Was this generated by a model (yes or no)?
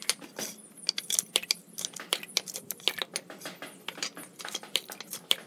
no